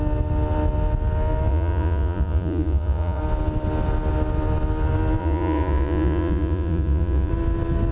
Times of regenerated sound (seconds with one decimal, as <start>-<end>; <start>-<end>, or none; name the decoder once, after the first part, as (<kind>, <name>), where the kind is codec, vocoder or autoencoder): 1.5-3.2 (vocoder, Vocos); 5.2-7.3